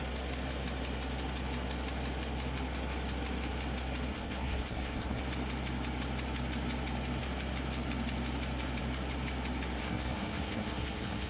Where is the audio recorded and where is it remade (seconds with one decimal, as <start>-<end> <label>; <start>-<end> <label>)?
0.0-4.1 recorded; 4.1-5.2 remade; 5.2-9.8 recorded; 9.8-11.3 remade